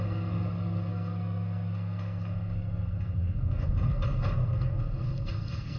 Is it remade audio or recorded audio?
remade